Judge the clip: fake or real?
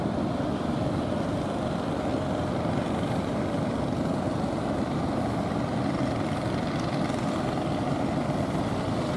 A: real